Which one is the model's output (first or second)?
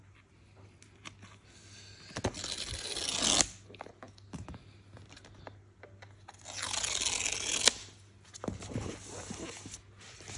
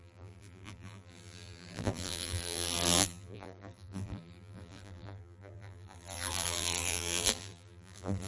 second